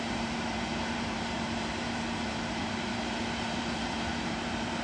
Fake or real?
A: fake